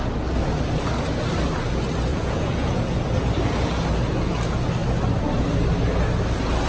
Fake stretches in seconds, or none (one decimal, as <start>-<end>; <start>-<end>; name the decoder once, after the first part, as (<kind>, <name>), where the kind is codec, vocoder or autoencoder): 2.1-2.8 (vocoder, Vocos)